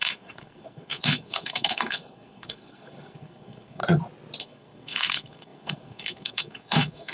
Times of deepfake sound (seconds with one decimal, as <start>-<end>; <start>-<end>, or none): 0.0-3.8; 4.4-7.1